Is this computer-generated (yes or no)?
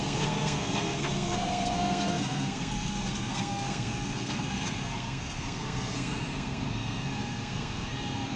yes